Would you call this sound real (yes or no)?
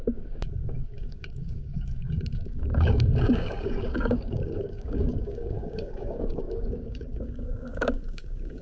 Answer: no